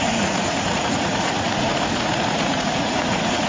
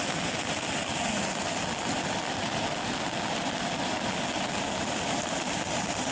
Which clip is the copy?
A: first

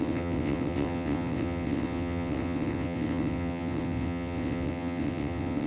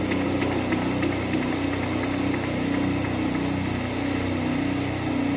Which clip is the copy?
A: first